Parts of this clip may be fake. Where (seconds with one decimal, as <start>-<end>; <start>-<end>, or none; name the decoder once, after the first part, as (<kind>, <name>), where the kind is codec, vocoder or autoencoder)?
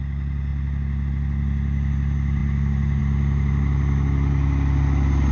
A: none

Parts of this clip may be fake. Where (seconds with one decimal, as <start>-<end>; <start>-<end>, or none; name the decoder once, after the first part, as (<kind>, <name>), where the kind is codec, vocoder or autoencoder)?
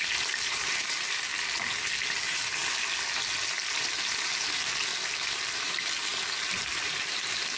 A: 0.0-1.3 (vocoder, BigVGAN v2); 2.1-2.6; 3.7-4.9; 5.6-7.6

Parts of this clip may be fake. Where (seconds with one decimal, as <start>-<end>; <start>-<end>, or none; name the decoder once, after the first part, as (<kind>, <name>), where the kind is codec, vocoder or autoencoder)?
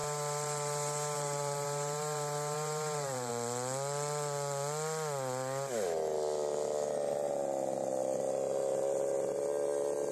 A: 0.0-3.3 (vocoder, BigVGAN v2)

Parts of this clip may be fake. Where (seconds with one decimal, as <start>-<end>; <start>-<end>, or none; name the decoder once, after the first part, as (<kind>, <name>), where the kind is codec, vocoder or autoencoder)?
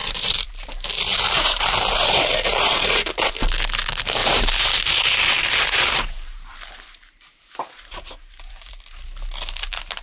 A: 0.0-0.5 (vocoder, BigVGAN v2); 1.1-3.3; 4.2-8.8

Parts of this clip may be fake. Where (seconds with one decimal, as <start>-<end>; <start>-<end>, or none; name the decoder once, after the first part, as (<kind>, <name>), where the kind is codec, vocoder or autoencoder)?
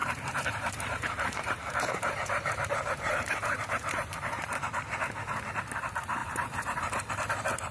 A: 0.0-4.6 (vocoder, BigVGAN v2); 6.2-7.1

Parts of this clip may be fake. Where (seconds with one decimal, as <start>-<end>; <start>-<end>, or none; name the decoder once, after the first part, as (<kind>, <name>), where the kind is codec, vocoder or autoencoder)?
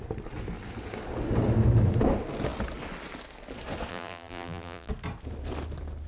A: 3.9-4.9 (vocoder, BigVGAN v2)